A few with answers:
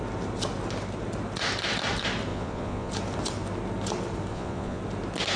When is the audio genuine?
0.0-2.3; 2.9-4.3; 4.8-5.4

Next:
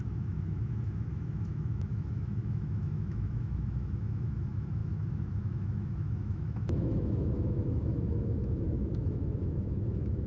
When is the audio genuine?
none